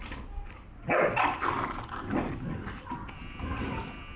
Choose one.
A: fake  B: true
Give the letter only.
B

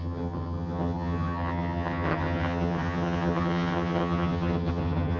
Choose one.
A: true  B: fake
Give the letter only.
B